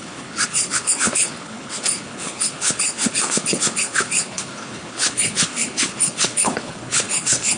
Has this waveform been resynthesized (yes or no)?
yes